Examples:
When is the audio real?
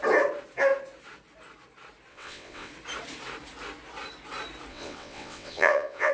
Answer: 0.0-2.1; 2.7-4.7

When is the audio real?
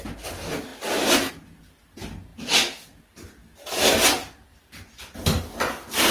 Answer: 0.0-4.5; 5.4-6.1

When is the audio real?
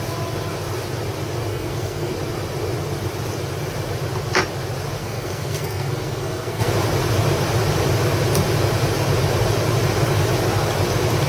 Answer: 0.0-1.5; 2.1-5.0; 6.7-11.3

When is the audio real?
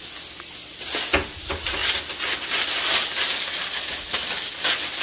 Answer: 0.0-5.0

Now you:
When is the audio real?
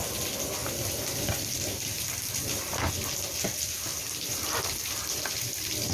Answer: 0.0-0.6; 2.9-3.9